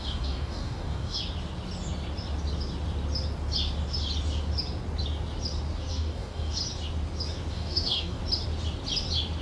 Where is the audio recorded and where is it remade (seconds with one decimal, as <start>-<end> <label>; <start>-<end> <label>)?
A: 0.0-1.2 remade; 1.2-5.9 recorded; 5.9-6.6 remade; 6.6-7.5 recorded; 7.5-8.2 remade; 8.2-9.4 recorded